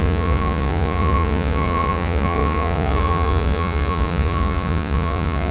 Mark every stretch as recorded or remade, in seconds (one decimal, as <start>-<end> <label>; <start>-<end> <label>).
0.0-5.5 remade